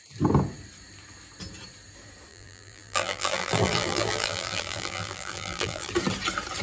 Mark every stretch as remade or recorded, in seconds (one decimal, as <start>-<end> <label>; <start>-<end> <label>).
0.0-2.3 recorded; 2.3-5.9 remade; 5.9-6.6 recorded